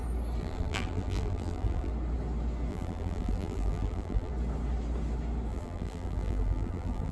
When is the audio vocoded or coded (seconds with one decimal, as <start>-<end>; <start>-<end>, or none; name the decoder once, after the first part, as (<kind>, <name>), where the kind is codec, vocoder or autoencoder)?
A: 0.4-1.9 (vocoder, BigVGAN v2); 2.7-4.3; 5.5-7.1